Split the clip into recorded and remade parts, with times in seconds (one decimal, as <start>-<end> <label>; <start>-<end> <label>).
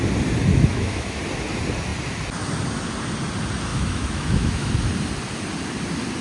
0.0-0.5 recorded; 0.5-1.2 remade; 1.2-3.7 recorded; 3.7-4.7 remade; 4.7-6.2 recorded